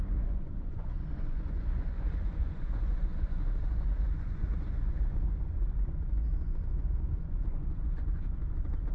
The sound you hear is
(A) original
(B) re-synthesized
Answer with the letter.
B